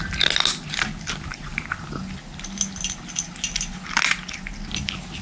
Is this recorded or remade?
recorded